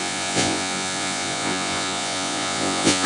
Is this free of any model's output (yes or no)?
no